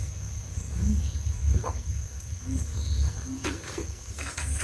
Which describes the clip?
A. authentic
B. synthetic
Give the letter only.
B